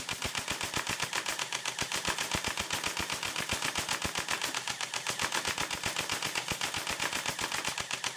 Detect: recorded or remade recorded